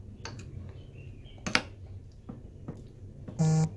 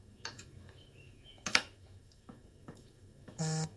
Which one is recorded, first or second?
first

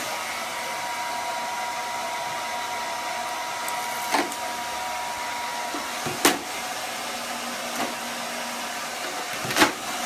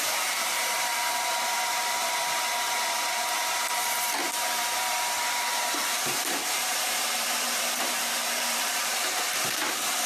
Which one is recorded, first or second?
first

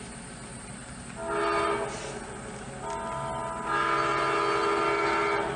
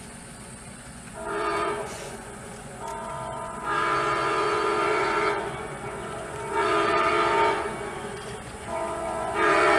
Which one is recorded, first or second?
first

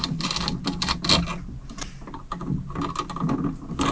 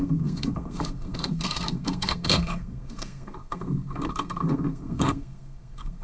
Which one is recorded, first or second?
first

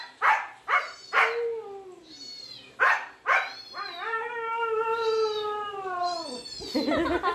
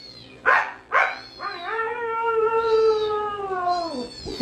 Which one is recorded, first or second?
first